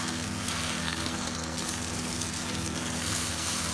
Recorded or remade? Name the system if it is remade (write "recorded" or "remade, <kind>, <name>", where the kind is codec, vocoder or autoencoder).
remade, codec, SNAC